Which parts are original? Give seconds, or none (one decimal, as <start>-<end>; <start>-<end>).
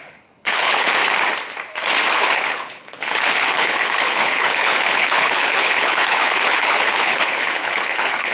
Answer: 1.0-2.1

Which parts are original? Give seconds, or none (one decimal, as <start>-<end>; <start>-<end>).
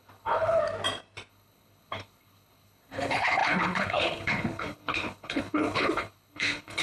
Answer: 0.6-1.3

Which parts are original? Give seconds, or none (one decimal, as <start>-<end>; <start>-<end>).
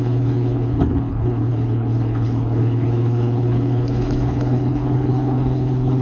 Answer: none